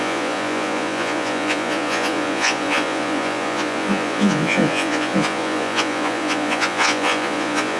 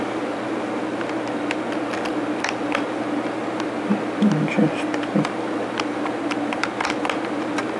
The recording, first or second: second